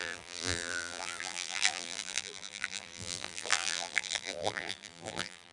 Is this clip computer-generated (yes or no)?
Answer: yes